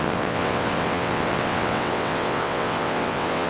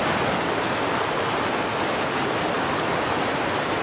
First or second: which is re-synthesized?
first